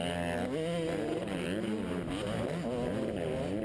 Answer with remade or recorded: recorded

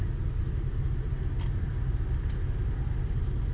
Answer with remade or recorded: recorded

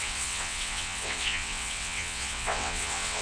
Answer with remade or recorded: remade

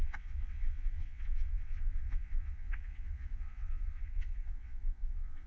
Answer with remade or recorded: remade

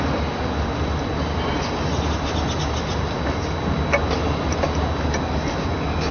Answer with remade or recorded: recorded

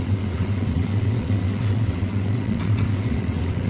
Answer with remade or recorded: remade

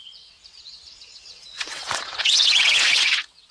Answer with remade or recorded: remade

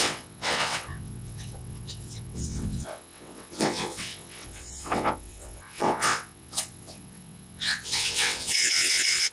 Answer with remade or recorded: remade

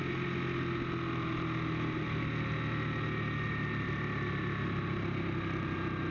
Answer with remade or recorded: recorded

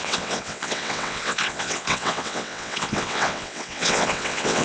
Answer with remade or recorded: remade